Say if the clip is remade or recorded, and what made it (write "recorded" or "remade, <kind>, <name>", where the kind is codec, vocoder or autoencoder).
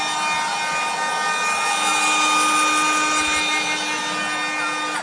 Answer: recorded